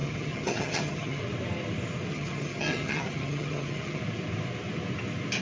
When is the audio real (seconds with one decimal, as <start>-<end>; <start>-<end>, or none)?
1.2-2.1; 4.0-5.4